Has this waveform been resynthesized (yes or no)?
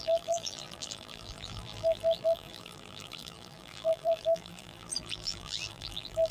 yes